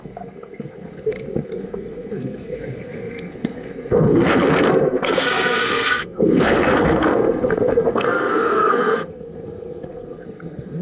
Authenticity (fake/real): fake